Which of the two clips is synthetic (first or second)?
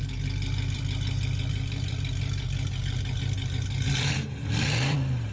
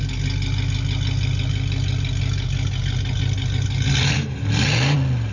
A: first